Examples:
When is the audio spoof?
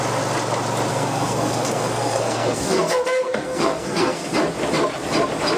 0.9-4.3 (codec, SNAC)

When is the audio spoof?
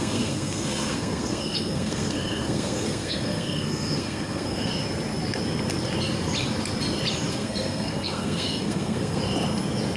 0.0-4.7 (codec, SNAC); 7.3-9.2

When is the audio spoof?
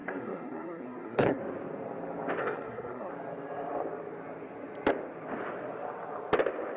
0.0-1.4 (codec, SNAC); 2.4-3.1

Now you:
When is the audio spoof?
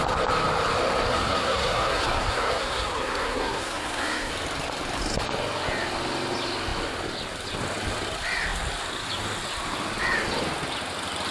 1.1-4.3 (codec, SNAC)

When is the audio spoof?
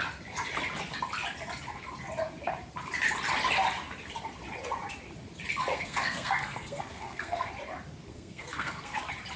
5.7-7.5 (codec, SNAC); 8.1-9.0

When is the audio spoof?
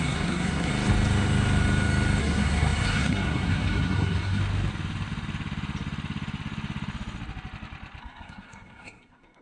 0.0-0.7 (codec, SNAC); 2.2-4.4; 8.0-9.4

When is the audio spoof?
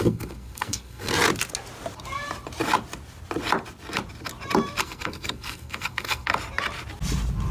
0.0-1.1 (codec, SNAC); 4.8-6.3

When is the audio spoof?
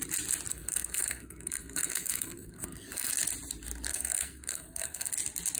0.5-3.1 (codec, SNAC); 3.9-5.1